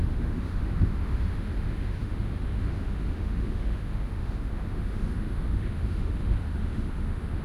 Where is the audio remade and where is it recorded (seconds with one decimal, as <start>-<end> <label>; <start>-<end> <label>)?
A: 0.0-7.4 remade